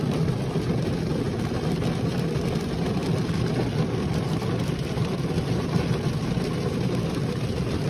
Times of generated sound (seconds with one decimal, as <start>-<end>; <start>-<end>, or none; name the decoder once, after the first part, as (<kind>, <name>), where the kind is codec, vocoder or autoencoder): 3.0-5.3 (vocoder, BigVGAN v2)